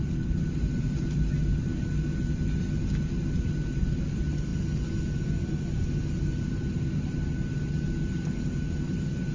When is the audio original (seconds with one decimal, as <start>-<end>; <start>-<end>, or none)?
0.0-9.3